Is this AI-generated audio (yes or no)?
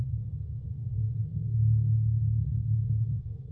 yes